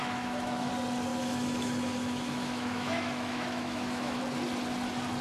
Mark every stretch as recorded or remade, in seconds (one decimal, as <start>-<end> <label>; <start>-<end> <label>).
0.0-0.7 remade; 0.7-1.1 recorded; 1.1-4.2 remade; 4.2-5.2 recorded